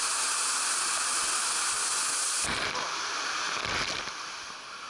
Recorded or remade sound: recorded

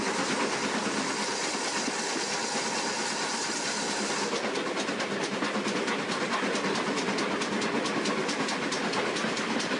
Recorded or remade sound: recorded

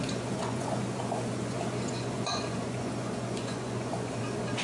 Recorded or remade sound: remade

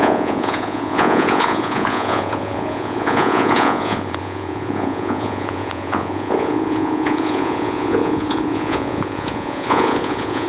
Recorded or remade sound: remade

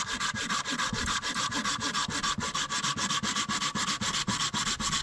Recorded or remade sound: recorded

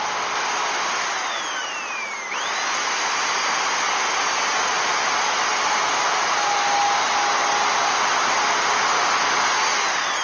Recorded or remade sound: recorded